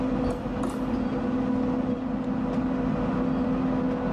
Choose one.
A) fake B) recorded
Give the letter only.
B